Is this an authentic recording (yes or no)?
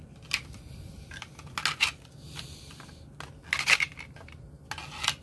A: yes